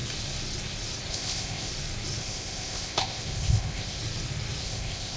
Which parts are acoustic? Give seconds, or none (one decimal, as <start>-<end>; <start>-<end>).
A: 0.0-1.1; 1.7-2.2; 4.0-4.6